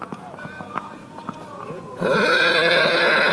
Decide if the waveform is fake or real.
fake